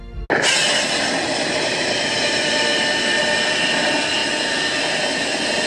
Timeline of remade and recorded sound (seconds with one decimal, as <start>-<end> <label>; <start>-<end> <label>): 0.0-0.6 recorded; 0.6-3.2 remade; 3.2-5.7 recorded